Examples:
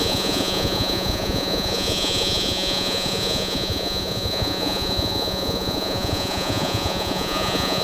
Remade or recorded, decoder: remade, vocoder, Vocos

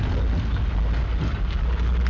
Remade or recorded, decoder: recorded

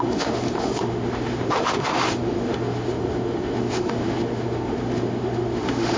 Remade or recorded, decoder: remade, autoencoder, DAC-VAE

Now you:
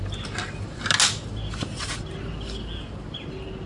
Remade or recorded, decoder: recorded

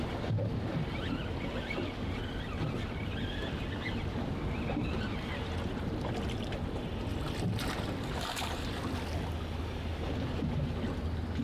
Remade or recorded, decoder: recorded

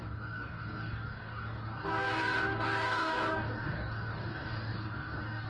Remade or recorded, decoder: remade, codec, DAC